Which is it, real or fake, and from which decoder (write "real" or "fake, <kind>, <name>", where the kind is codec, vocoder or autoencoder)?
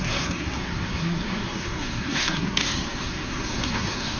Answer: fake, codec, SNAC